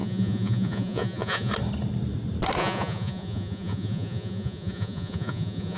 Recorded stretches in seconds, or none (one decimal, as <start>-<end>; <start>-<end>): 1.5-2.6